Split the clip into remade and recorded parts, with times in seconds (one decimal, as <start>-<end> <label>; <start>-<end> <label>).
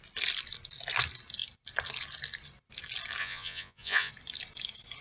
0.0-3.2 recorded; 3.2-4.1 remade; 4.1-5.0 recorded